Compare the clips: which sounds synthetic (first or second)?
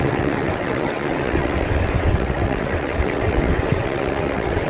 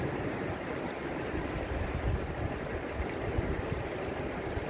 first